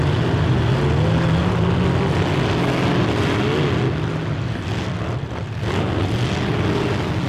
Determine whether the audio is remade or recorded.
recorded